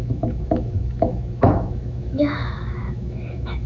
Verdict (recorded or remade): remade